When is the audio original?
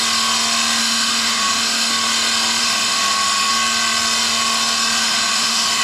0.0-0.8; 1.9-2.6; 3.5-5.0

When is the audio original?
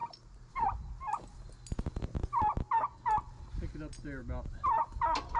0.5-5.4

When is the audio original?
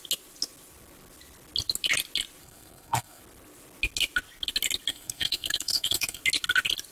0.0-2.4; 3.2-4.9; 6.2-6.9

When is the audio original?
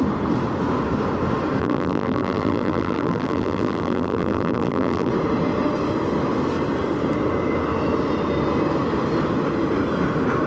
0.0-1.6; 5.1-10.5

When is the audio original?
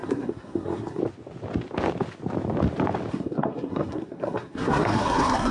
1.0-3.1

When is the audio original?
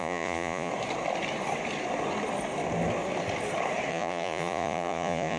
0.7-3.9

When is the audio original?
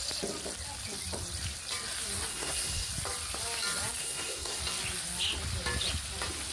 0.0-2.3; 2.9-4.0; 4.6-6.5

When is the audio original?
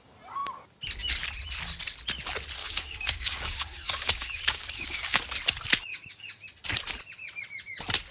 0.0-2.6; 5.2-5.9; 6.4-8.1